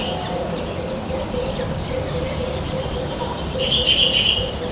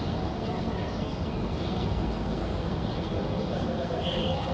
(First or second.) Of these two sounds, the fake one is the second